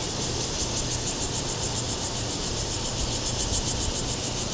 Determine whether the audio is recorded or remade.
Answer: remade